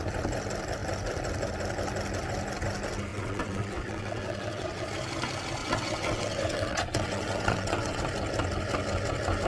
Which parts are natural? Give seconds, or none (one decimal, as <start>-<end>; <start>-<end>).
0.0-3.1; 4.9-5.6; 8.0-9.5